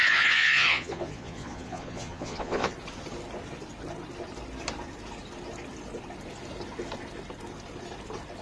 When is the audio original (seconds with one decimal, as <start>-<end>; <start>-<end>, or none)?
2.7-8.4